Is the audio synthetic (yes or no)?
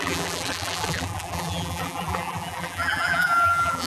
yes